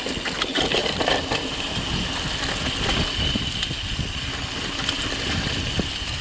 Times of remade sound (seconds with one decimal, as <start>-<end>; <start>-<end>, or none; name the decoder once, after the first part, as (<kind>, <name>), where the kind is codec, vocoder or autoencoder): none